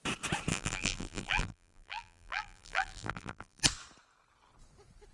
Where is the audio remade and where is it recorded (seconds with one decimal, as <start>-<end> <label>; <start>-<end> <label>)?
0.0-0.5 recorded; 0.5-3.6 remade; 3.6-5.1 recorded